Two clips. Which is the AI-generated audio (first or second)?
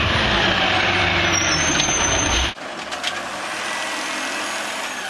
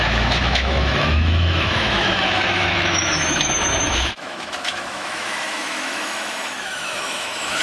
second